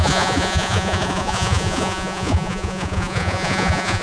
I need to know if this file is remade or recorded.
remade